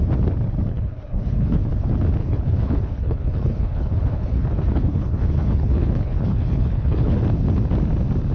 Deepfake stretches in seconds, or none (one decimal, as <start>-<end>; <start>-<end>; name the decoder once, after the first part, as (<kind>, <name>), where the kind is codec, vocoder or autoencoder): 0.7-1.7 (codec, HILCodec); 2.2-7.2